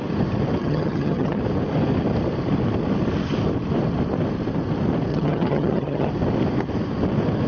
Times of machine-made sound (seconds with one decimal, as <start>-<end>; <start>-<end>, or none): 0.6-1.4; 5.1-6.1